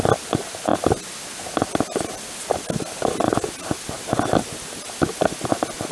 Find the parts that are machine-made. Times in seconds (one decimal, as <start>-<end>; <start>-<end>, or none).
none